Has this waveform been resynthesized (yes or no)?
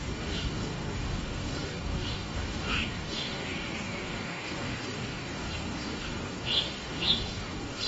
yes